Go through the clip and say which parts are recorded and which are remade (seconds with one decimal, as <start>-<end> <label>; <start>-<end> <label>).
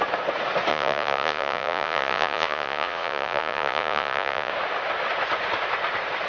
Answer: 0.0-0.7 recorded; 0.7-4.5 remade; 4.5-6.3 recorded